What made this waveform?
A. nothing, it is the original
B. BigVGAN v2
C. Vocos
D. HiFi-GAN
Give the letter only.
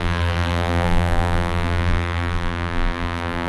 B